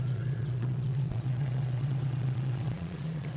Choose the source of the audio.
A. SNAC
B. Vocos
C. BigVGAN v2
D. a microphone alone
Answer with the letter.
B